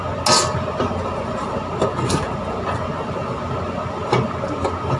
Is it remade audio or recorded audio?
recorded